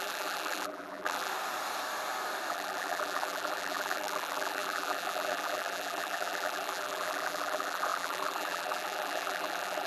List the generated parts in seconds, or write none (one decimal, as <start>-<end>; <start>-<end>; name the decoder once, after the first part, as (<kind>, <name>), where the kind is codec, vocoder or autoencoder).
0.0-1.3 (vocoder, BigVGAN v2); 2.5-9.9